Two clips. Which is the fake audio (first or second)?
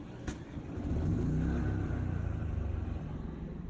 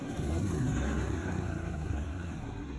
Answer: second